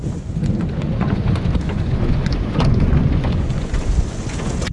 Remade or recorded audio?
remade